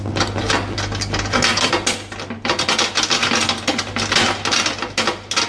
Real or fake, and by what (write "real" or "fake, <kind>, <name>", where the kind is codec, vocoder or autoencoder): real